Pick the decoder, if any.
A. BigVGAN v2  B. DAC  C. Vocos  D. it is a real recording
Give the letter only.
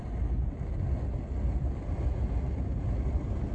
D